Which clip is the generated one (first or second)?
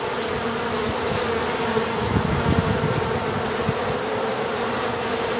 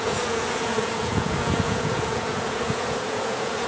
second